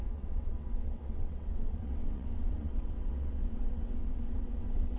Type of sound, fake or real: fake